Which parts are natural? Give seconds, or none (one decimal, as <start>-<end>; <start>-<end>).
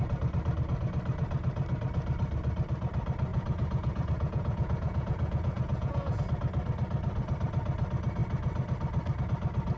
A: 0.0-3.3; 6.2-9.8